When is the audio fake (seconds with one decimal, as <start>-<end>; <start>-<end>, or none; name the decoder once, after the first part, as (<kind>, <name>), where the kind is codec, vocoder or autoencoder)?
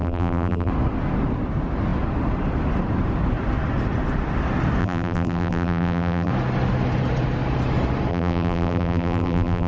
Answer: 0.0-0.7 (vocoder, BigVGAN v2); 4.8-6.3; 8.1-9.7